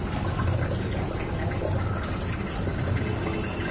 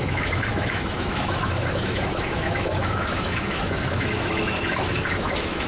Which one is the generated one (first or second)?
second